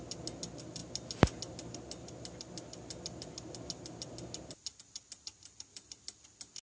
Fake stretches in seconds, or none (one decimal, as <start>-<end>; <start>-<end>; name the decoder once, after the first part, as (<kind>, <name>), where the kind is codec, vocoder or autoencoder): none